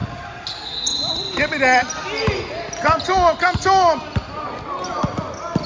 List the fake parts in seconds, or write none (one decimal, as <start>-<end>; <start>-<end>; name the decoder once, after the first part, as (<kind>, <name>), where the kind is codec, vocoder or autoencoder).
none